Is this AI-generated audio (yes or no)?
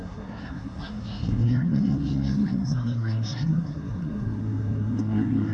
yes